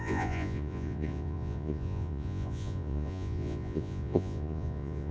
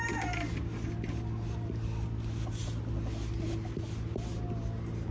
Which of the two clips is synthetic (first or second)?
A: first